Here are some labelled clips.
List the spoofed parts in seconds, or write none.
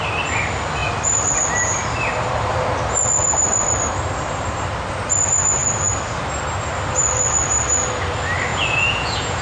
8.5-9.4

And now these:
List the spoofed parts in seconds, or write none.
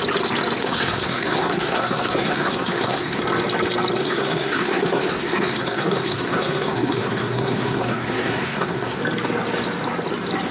0.6-3.2; 4.0-9.0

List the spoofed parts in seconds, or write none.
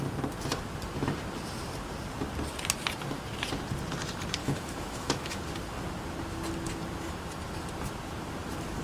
4.4-5.4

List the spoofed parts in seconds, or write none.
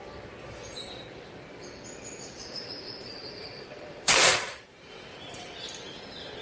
2.4-5.9